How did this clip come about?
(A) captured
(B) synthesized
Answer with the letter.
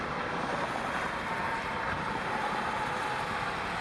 A